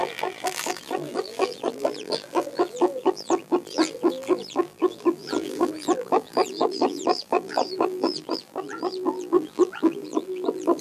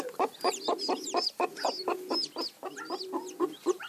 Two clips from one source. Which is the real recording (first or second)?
second